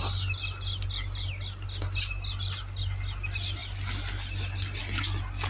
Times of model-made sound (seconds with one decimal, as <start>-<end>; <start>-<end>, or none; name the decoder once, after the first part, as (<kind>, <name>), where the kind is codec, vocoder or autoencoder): none